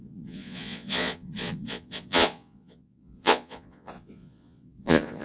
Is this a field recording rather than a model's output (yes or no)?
no